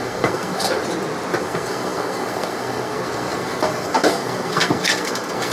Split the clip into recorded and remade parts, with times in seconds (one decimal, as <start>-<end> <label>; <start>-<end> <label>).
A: 0.0-0.8 remade; 0.8-1.4 recorded; 1.4-5.5 remade

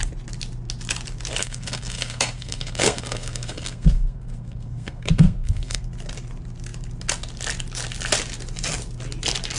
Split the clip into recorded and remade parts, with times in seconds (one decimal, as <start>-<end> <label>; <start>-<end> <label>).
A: 0.0-1.4 recorded; 1.4-5.9 remade; 5.9-9.6 recorded

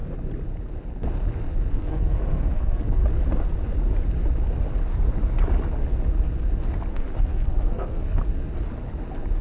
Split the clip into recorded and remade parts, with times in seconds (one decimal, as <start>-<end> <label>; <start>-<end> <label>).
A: 0.0-1.7 recorded; 1.7-3.0 remade; 3.0-6.9 recorded; 6.9-8.2 remade; 8.2-9.4 recorded